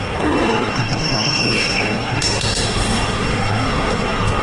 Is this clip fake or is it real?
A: fake